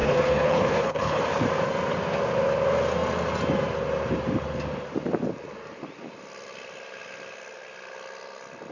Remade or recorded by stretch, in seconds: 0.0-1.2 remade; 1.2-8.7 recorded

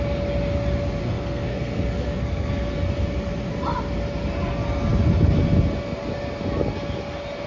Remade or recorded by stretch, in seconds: 0.0-1.0 recorded; 1.0-2.7 remade; 2.7-7.5 recorded

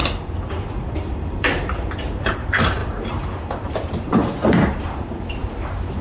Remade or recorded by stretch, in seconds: 0.0-0.7 recorded; 0.7-6.0 remade

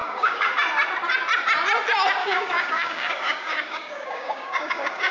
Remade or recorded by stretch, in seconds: 0.0-0.5 remade; 0.5-2.2 recorded; 2.2-5.1 remade

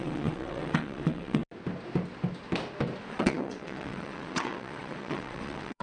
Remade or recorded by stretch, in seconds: 0.0-1.4 remade; 1.4-3.1 recorded; 3.1-5.8 remade

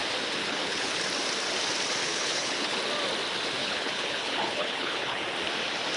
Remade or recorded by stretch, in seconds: 0.0-0.4 recorded; 0.4-1.0 remade; 1.0-2.0 recorded; 2.0-2.8 remade; 2.8-3.6 recorded; 3.6-5.2 remade; 5.2-6.0 recorded

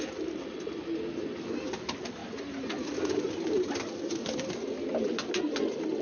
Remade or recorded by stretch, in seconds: 0.0-6.0 recorded